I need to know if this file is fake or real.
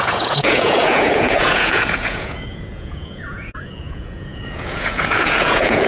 fake